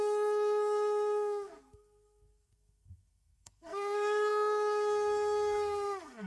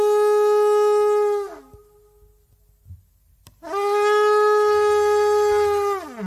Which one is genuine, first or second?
second